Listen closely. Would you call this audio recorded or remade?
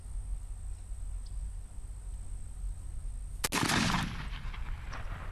recorded